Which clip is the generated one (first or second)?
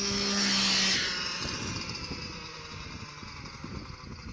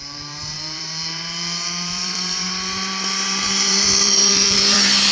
second